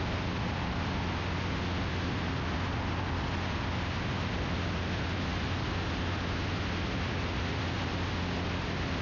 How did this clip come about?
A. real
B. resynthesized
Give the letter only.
A